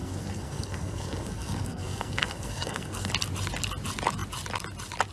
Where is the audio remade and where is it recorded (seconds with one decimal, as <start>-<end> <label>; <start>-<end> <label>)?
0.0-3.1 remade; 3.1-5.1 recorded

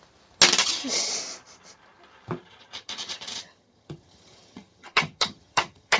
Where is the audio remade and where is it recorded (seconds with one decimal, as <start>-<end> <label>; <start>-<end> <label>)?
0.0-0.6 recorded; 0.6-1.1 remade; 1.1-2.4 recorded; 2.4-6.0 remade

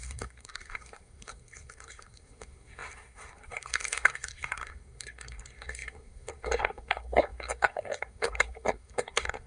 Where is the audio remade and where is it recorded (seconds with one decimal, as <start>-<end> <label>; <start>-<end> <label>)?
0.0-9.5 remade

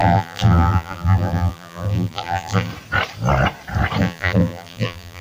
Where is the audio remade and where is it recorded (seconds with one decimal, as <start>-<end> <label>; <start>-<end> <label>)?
0.0-2.7 remade; 2.7-4.0 recorded; 4.0-5.2 remade

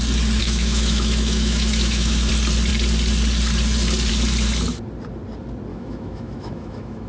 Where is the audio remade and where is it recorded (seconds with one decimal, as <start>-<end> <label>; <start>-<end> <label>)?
0.0-0.4 recorded; 0.4-2.3 remade; 2.3-5.7 recorded; 5.7-7.1 remade